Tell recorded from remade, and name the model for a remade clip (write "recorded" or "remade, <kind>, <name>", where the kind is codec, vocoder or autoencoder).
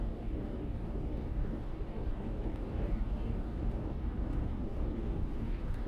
remade, codec, DAC